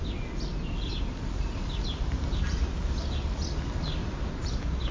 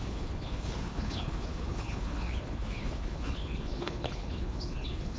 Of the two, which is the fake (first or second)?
second